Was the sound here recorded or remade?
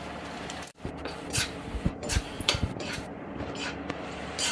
remade